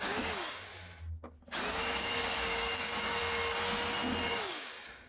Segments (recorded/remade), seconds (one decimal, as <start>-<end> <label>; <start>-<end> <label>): 0.0-0.7 remade; 0.7-1.7 recorded; 1.7-3.2 remade; 3.2-4.3 recorded; 4.3-5.1 remade